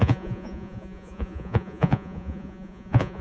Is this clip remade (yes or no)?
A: yes